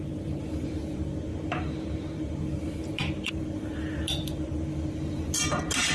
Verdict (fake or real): fake